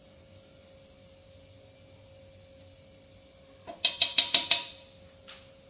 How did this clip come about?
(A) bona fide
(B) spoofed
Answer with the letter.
A